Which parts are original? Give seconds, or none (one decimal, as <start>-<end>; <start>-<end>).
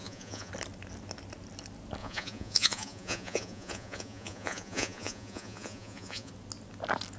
0.5-2.0; 6.3-7.2